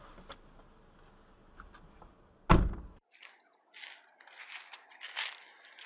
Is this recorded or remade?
recorded